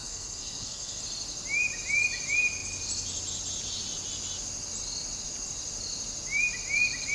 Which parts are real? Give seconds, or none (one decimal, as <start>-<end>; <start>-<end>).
1.0-7.1